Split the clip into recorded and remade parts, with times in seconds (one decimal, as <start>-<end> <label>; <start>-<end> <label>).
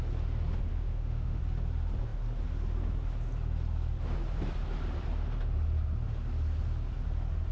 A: 0.0-0.7 recorded; 0.7-1.4 remade; 1.4-7.5 recorded